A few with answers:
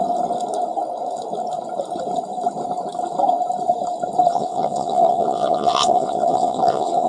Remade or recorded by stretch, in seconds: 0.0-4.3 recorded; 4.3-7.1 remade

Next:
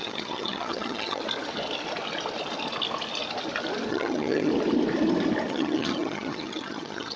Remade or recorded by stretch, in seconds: 0.0-1.2 remade; 1.2-3.9 recorded; 3.9-4.5 remade; 4.5-5.5 recorded; 5.5-7.2 remade

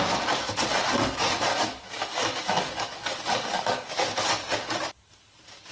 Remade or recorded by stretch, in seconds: 0.0-1.5 recorded; 1.5-3.9 remade; 3.9-5.7 recorded